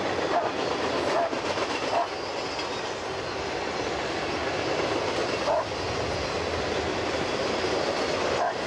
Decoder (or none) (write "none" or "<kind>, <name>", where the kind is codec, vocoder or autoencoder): none